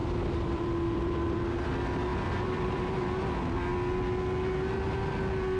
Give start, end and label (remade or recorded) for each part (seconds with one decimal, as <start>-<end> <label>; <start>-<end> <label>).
0.0-1.4 remade; 1.4-2.1 recorded; 2.1-2.9 remade; 2.9-5.6 recorded